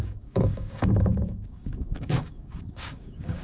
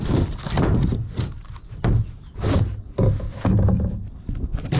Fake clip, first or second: first